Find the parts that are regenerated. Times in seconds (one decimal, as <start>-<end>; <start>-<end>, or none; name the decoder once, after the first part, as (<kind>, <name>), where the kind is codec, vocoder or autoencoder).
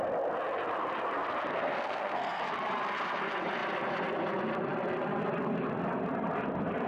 1.5-2.4 (codec, SNAC)